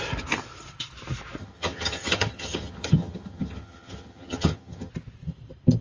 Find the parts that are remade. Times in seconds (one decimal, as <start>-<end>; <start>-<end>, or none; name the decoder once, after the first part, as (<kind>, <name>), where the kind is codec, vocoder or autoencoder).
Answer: 1.4-4.9 (vocoder, HiFi-GAN)